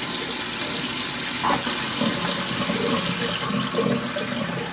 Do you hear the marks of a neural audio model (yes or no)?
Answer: no